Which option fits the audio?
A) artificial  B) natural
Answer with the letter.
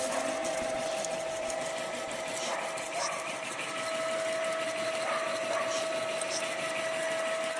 B